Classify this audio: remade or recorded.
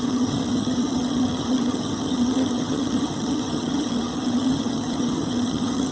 remade